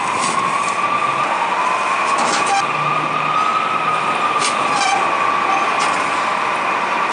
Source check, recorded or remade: recorded